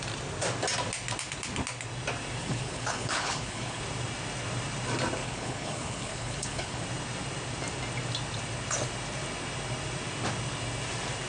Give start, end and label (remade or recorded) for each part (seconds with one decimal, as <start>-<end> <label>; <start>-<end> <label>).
0.0-2.4 recorded; 2.4-3.8 remade; 3.8-5.2 recorded; 5.2-6.8 remade; 6.8-11.3 recorded

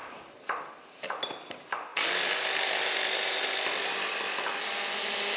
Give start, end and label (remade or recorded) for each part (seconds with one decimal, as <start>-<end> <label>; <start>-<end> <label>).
0.0-5.4 recorded

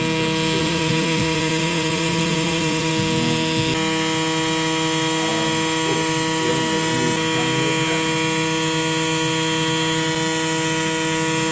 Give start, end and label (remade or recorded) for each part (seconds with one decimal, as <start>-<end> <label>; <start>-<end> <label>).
0.0-0.6 recorded; 0.6-2.9 remade; 2.9-11.5 recorded

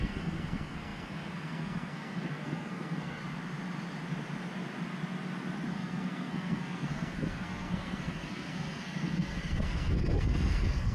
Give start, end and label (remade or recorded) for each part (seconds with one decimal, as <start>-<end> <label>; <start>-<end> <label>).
0.0-3.2 remade; 3.2-5.7 recorded; 5.7-10.9 remade

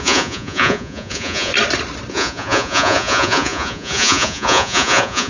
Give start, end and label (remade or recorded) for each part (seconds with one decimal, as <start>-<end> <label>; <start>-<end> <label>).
0.0-1.5 remade; 1.5-2.1 recorded; 2.1-5.3 remade

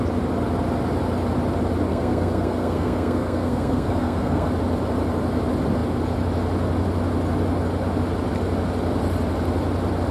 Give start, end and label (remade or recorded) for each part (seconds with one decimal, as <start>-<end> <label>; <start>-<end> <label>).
0.0-1.9 recorded; 1.9-4.5 remade; 4.5-10.1 recorded